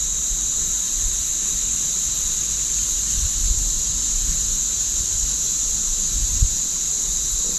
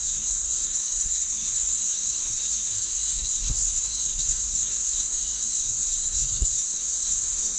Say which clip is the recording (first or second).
first